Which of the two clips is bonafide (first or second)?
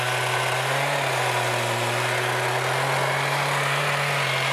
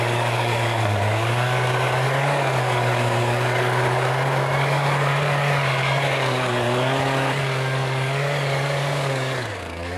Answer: first